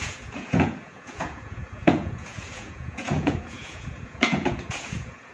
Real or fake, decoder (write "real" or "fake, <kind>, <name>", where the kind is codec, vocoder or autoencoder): fake, vocoder, Vocos